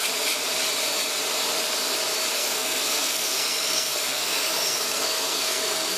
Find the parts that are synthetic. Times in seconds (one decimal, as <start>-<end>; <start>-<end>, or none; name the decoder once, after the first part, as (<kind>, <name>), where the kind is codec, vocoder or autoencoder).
2.3-6.0 (codec, SNAC)